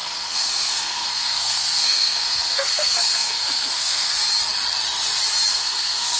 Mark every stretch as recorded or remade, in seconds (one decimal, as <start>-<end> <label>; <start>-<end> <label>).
0.0-4.2 remade; 4.2-5.5 recorded; 5.5-6.2 remade